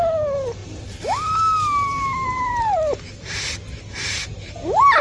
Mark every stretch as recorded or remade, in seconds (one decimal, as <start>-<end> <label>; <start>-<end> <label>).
0.0-5.0 recorded